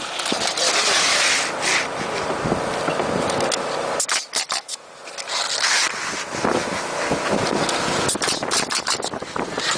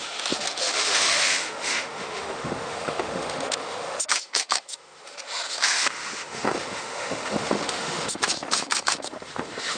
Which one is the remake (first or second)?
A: second